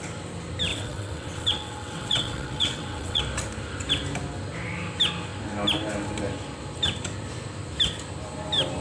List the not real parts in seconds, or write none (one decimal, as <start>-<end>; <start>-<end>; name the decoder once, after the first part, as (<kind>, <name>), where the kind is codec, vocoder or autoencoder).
0.7-3.2 (vocoder, WaveNeXt)

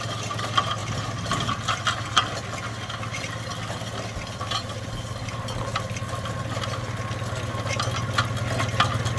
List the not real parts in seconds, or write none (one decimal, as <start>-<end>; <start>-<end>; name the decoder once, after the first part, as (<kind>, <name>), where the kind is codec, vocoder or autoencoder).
none